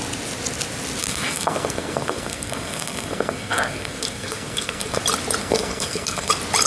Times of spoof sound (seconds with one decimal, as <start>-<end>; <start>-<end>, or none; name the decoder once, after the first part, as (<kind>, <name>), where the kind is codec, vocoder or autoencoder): 1.0-5.0 (codec, SNAC); 5.4-6.3